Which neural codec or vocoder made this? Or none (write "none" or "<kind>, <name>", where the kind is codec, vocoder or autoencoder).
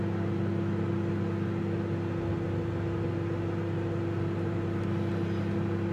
none